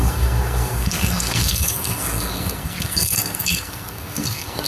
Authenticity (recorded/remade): remade